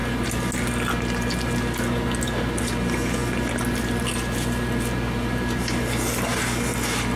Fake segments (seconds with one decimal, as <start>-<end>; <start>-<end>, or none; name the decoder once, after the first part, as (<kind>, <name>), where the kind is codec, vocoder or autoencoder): none